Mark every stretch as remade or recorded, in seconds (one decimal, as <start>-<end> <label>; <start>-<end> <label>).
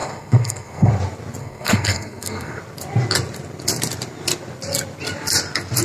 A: 0.0-0.9 remade; 0.9-1.4 recorded; 1.4-2.6 remade; 2.6-5.8 recorded